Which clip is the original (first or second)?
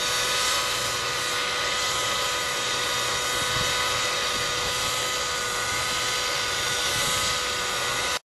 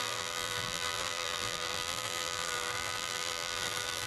first